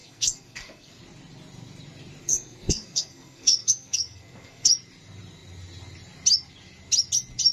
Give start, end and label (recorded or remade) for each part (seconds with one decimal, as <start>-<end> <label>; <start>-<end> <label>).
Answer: 0.0-1.0 remade; 1.0-2.2 recorded; 2.2-4.7 remade; 4.7-7.5 recorded